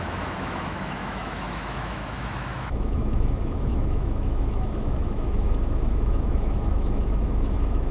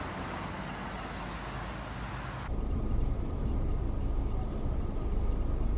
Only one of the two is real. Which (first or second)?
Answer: second